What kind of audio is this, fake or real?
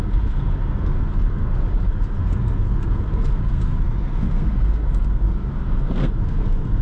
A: fake